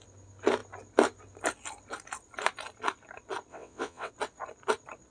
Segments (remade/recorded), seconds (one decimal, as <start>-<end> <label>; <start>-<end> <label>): 0.0-3.5 recorded; 3.5-4.1 remade; 4.1-5.1 recorded